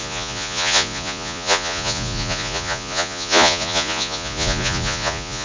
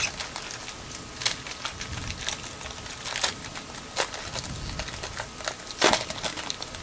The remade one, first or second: first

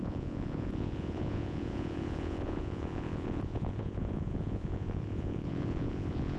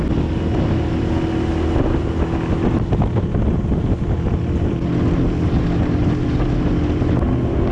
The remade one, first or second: first